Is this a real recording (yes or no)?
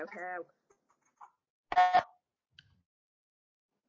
yes